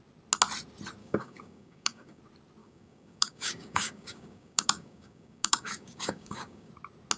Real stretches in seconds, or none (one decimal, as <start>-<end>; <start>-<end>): 0.0-1.0; 2.2-2.6; 6.7-7.2